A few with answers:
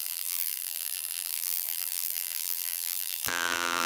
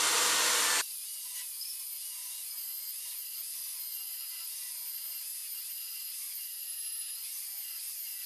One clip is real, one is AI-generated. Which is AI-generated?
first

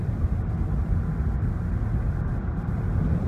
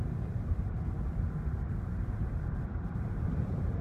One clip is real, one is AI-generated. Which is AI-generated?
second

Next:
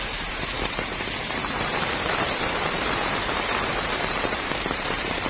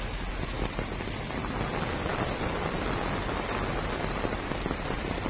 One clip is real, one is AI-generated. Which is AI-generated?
first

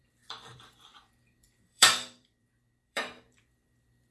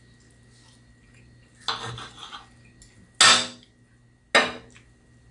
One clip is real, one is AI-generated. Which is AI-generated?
first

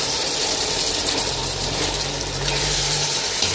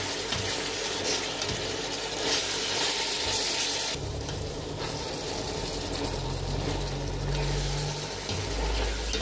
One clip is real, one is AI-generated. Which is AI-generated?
first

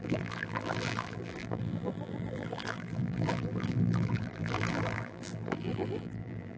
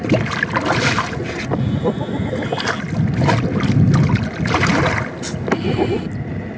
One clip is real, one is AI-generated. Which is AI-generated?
first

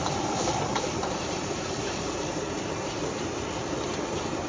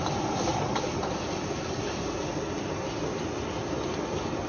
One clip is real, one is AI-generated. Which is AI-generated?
first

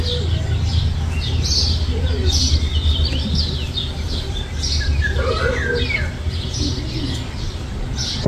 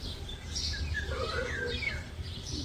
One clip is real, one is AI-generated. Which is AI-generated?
second